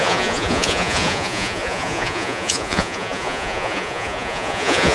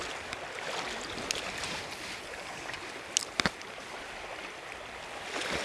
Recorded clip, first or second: second